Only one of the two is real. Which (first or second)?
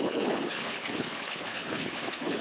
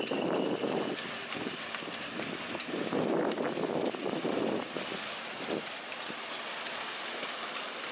second